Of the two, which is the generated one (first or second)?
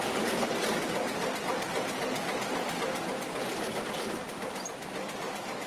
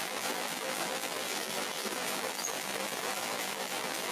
second